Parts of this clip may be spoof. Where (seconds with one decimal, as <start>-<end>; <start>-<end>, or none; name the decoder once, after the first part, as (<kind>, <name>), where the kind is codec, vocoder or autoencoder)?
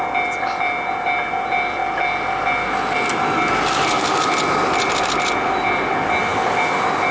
none